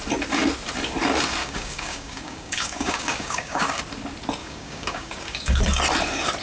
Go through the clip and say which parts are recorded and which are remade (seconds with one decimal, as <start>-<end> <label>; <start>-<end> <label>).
0.0-1.4 recorded; 1.4-3.8 remade; 3.8-4.4 recorded; 4.4-5.6 remade; 5.6-6.4 recorded

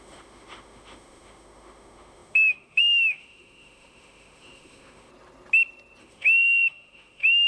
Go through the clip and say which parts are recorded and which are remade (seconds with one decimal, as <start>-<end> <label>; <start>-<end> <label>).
0.0-5.1 remade; 5.1-6.0 recorded; 6.0-7.5 remade

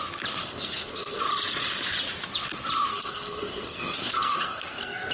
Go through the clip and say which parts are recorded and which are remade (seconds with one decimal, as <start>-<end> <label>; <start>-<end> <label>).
0.0-0.4 recorded; 0.4-1.2 remade; 1.2-2.9 recorded; 2.9-5.1 remade

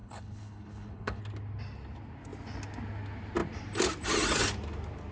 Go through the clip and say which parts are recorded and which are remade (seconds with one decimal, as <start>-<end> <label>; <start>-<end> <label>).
0.0-1.2 remade; 1.2-5.1 recorded